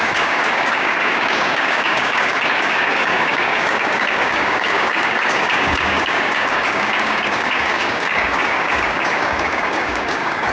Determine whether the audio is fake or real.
fake